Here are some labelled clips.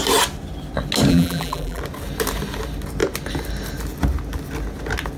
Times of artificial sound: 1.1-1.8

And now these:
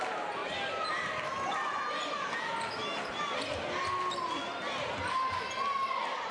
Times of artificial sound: 2.8-3.8

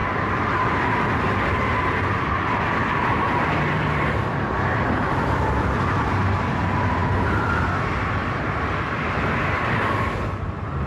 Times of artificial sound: 0.0-4.4

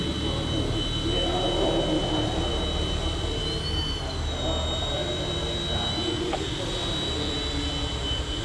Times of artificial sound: none